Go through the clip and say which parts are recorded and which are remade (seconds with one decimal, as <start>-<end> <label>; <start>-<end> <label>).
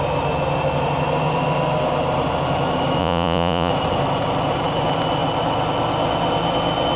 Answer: 0.0-3.0 recorded; 3.0-3.7 remade; 3.7-7.0 recorded